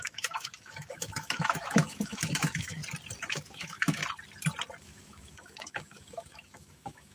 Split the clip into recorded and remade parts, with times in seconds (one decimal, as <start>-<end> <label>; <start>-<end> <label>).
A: 0.0-2.8 remade; 2.8-3.3 recorded; 3.3-4.0 remade; 4.0-4.8 recorded; 4.8-7.1 remade